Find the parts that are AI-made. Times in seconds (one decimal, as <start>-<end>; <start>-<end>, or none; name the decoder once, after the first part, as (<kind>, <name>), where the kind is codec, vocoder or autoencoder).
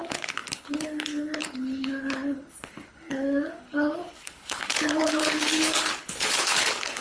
0.0-7.0 (codec, HILCodec)